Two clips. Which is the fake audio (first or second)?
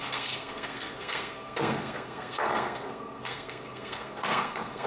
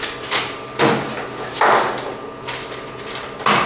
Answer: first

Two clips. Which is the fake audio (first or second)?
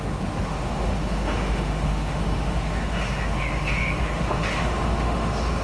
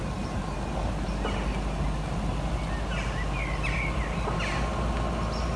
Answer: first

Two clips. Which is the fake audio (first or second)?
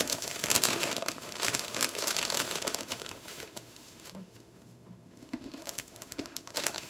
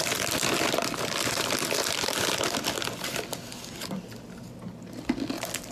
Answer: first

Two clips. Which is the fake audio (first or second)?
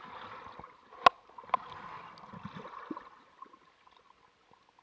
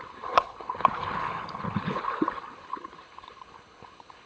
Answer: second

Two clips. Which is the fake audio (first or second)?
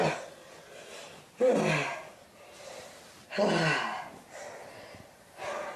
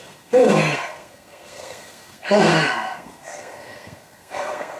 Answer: second